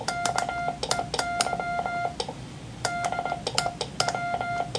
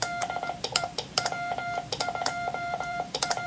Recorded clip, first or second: first